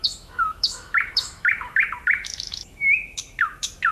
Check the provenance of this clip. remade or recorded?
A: remade